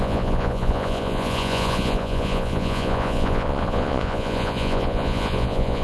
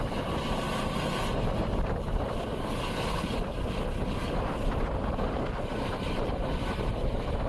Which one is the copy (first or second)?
first